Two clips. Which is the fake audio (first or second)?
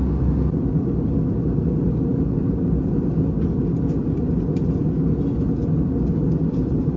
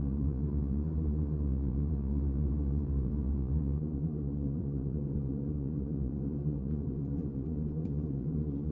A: second